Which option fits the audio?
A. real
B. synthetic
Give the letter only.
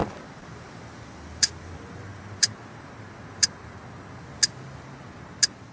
A